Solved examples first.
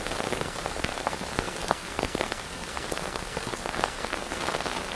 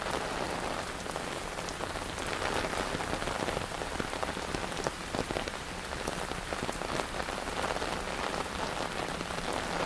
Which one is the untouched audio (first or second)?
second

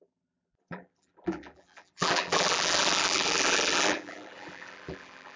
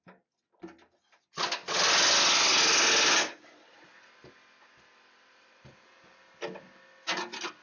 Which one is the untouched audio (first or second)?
second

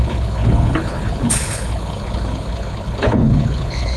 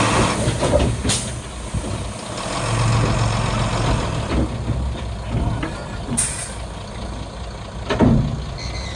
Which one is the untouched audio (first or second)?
second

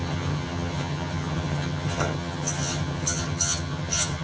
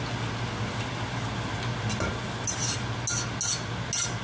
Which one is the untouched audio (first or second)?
second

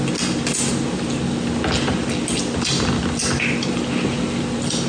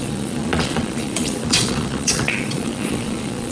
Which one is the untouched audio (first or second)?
first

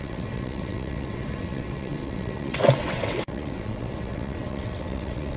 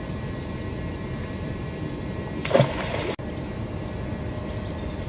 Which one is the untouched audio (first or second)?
second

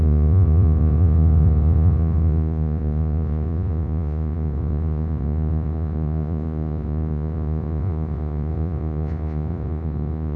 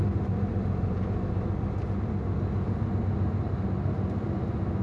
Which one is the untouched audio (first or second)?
second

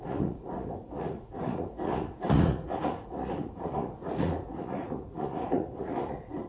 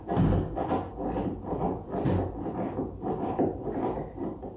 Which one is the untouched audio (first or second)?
second